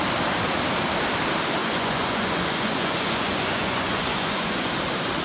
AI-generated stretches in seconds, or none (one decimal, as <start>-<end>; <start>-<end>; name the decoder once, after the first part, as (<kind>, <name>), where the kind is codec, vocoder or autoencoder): 1.6-4.7 (vocoder, Vocos)